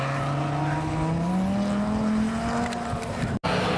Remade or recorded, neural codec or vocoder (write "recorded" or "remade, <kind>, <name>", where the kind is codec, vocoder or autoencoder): recorded